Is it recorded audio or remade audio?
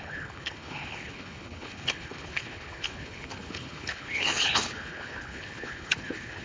remade